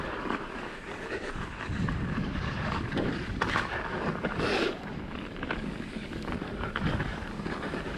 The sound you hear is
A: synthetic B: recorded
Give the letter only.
A